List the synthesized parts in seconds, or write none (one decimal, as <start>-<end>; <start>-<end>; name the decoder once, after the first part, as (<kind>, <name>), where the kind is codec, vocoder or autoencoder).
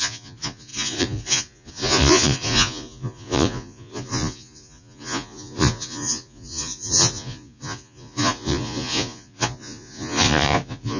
0.0-11.0 (vocoder, Vocos)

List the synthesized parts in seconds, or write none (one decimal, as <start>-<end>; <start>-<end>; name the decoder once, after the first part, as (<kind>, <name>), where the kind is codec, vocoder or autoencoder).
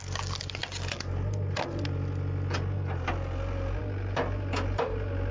none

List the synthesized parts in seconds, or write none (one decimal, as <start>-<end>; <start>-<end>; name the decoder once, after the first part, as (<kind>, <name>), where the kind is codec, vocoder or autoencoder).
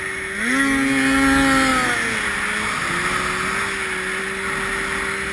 none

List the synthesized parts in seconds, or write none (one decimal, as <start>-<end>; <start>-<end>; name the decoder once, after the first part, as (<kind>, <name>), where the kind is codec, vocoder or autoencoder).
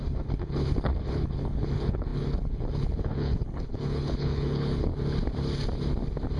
0.0-4.9 (codec, HILCodec)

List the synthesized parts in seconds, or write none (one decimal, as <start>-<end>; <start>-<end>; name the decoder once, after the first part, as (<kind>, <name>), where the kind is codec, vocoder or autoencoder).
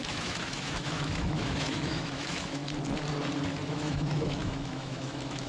0.0-2.6 (autoencoder, DAC-VAE); 3.7-5.5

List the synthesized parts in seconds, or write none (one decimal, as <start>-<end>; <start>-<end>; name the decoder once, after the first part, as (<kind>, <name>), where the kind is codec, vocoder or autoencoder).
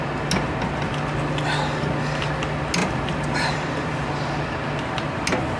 2.8-3.9 (vocoder, BigVGAN v2)